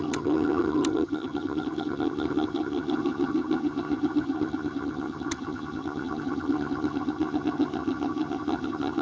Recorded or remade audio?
remade